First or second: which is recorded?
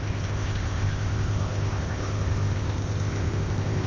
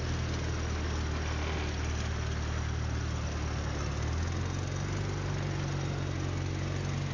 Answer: second